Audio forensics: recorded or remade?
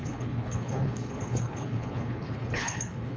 remade